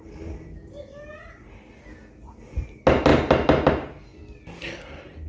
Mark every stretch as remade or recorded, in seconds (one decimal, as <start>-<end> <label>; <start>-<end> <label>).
0.0-5.3 recorded